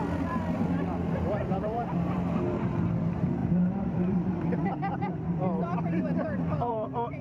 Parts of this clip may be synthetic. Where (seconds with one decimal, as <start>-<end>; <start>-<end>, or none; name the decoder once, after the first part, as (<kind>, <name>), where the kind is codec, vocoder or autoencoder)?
0.0-7.2 (vocoder, BigVGAN v2)